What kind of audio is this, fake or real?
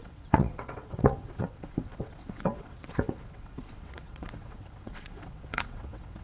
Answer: fake